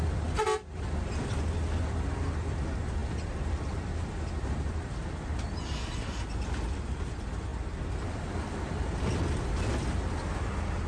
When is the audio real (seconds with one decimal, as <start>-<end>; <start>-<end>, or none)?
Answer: 0.0-10.9